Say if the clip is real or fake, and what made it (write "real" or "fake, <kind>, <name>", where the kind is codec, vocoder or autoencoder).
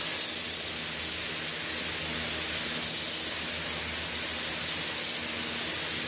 real